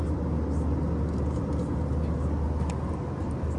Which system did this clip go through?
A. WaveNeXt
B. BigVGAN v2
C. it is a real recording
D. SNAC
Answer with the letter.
C